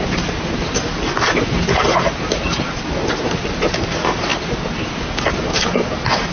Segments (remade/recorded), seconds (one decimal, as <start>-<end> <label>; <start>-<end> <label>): 0.0-6.3 recorded